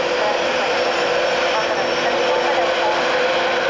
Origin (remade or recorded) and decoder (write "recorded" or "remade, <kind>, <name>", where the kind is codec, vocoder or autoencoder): recorded